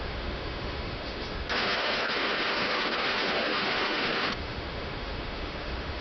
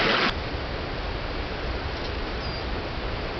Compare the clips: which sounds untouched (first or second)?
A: second